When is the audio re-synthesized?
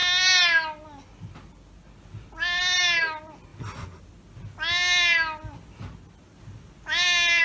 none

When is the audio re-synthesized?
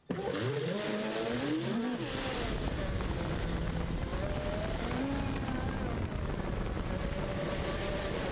none